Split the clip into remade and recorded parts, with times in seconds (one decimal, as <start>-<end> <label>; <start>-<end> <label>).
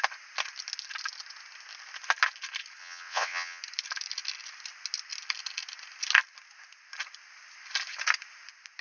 0.0-2.8 recorded; 2.8-3.6 remade; 3.6-8.8 recorded